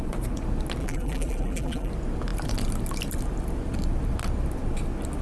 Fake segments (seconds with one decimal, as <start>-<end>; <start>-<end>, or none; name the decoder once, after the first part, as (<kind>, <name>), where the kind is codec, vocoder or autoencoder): 0.8-1.9 (vocoder, BigVGAN v2)